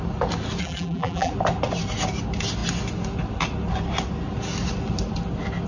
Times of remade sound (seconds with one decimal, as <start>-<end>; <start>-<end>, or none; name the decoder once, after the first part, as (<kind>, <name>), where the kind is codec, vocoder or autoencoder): 0.6-1.3 (vocoder, BigVGAN v2)